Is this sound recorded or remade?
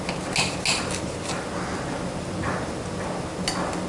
recorded